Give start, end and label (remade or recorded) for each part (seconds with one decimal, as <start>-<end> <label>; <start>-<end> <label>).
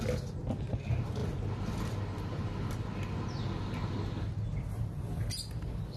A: 0.0-6.0 recorded